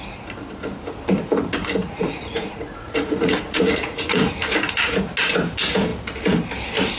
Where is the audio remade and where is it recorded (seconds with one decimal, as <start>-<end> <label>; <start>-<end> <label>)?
0.0-1.8 recorded; 1.8-4.3 remade; 4.3-7.0 recorded